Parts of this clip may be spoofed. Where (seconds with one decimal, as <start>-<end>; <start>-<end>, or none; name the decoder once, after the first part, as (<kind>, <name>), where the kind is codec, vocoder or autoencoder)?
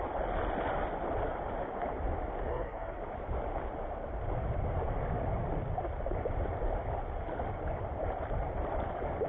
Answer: 2.5-3.0 (codec, SNAC)